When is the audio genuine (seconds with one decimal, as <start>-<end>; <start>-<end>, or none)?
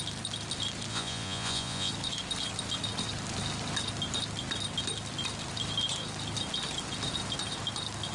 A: 0.0-0.9; 1.9-8.1